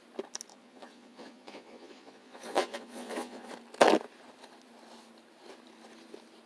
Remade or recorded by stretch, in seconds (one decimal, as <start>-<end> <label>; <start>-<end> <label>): 0.0-0.5 recorded; 0.5-3.5 remade; 3.5-6.5 recorded

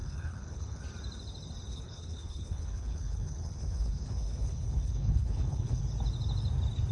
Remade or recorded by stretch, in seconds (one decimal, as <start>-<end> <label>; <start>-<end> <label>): 0.0-0.8 remade; 0.8-1.7 recorded; 1.7-5.8 remade; 5.8-6.9 recorded

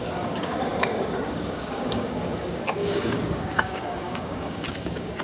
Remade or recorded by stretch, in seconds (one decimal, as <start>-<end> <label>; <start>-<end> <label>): 0.0-5.2 remade

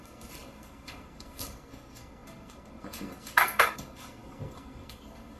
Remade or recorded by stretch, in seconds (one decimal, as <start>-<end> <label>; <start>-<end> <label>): 0.0-5.4 remade

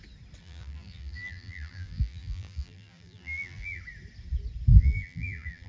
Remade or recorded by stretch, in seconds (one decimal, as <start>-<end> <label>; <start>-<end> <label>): 0.0-0.4 recorded; 0.4-3.8 remade; 3.8-4.7 recorded; 4.7-5.7 remade

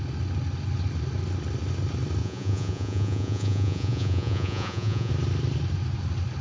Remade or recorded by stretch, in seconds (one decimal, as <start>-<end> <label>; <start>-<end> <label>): 0.0-2.2 recorded; 2.2-5.1 remade; 5.1-6.4 recorded